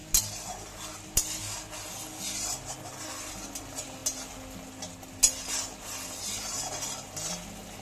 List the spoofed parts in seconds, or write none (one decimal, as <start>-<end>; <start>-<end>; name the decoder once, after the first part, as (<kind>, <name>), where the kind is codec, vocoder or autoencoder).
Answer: none